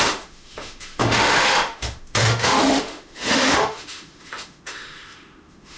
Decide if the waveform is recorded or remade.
remade